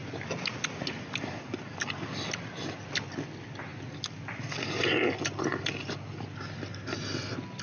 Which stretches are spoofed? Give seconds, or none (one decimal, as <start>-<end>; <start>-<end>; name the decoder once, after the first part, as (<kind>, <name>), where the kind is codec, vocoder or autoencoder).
none